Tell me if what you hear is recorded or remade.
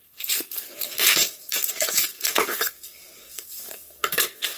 remade